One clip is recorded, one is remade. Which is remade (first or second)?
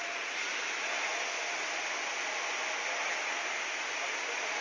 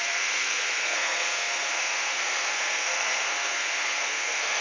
second